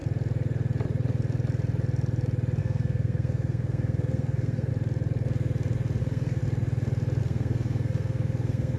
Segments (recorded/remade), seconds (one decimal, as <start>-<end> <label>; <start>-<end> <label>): 0.0-2.6 recorded; 2.6-4.7 remade; 4.7-6.0 recorded; 6.0-6.4 remade; 6.4-7.2 recorded; 7.2-8.8 remade